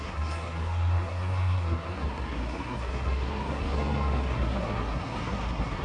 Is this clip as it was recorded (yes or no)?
no